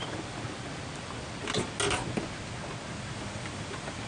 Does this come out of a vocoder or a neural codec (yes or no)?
no